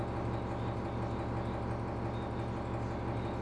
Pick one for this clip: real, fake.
real